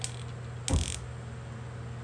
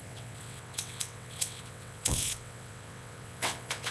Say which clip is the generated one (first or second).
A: second